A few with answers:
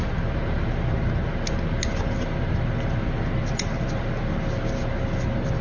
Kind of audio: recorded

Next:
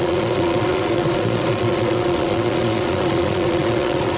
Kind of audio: remade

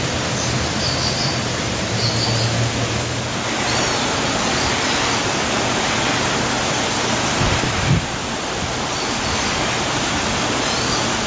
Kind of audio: recorded